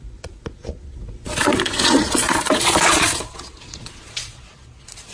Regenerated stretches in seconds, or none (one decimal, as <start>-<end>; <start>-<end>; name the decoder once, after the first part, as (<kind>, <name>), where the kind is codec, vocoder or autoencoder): 0.0-5.1 (vocoder, Vocos)